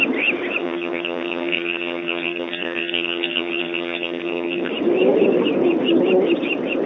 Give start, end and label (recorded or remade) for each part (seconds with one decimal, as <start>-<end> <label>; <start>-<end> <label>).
0.0-0.6 recorded; 0.6-4.7 remade; 4.7-6.9 recorded